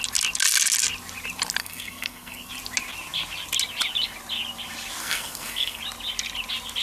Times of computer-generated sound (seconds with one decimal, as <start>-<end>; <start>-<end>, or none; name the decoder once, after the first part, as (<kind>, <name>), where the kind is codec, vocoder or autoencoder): 1.6-2.5 (codec, SNAC); 5.0-5.8